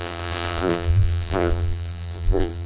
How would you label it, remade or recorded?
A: remade